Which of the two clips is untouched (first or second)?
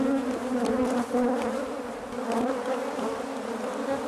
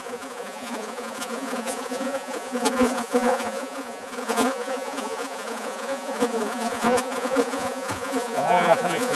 first